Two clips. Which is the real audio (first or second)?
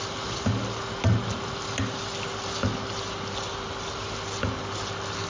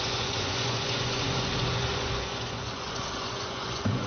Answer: first